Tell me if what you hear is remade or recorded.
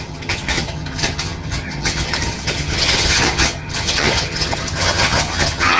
remade